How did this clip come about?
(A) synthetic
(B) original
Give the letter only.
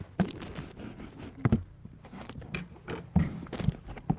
B